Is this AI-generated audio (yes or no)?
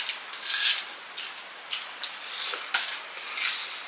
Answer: no